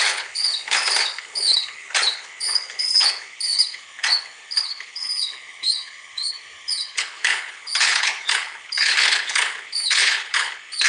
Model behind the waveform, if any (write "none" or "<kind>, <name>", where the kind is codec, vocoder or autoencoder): codec, HILCodec